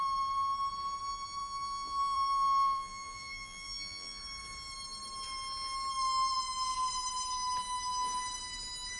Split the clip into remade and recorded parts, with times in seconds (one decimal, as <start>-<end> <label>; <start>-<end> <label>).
0.0-1.4 recorded; 1.4-4.2 remade; 4.2-9.0 recorded